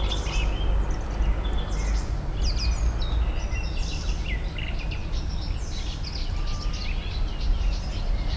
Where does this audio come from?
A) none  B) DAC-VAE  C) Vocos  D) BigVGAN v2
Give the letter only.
A